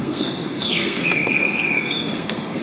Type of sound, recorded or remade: remade